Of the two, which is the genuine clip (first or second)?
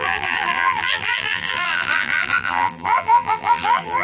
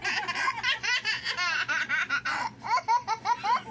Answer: second